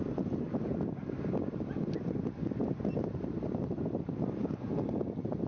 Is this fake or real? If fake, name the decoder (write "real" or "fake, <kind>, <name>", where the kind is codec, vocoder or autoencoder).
real